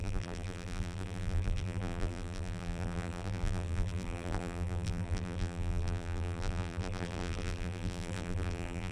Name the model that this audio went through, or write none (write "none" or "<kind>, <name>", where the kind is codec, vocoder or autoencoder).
vocoder, BigVGAN v2